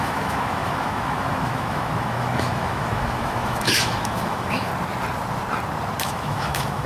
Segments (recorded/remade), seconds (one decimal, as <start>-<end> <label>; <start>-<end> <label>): 0.0-4.7 remade; 4.7-6.0 recorded; 6.0-6.9 remade

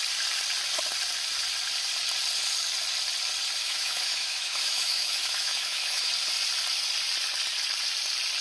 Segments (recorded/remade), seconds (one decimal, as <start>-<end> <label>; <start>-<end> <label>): 0.0-3.6 recorded; 3.6-6.1 remade; 6.1-8.4 recorded

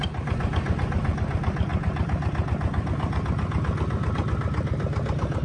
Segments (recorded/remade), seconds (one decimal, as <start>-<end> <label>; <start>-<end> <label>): 0.0-5.4 recorded

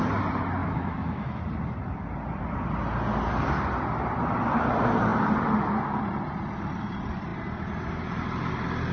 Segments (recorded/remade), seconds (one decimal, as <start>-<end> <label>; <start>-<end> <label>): 0.0-0.6 recorded; 0.6-1.4 remade; 1.4-8.9 recorded

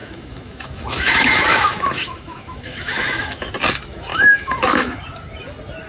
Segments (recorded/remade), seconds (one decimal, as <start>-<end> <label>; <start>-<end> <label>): 0.0-3.5 remade; 3.5-4.1 recorded; 4.1-5.0 remade; 5.0-5.9 recorded